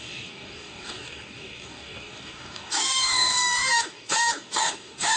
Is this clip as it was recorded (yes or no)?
no